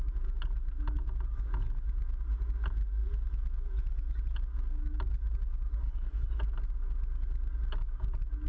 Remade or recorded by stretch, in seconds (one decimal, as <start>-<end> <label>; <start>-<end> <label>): 0.0-5.8 recorded; 5.8-6.4 remade; 6.4-8.5 recorded